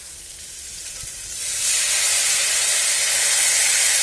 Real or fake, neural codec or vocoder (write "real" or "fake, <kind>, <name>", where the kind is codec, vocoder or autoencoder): real